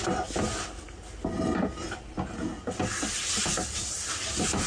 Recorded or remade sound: recorded